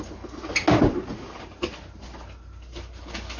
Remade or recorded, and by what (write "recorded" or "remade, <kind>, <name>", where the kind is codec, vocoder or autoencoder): recorded